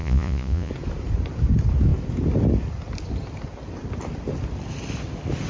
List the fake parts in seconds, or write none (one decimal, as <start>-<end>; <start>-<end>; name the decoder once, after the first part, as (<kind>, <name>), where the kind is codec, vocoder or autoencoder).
0.0-0.7 (vocoder, Vocos)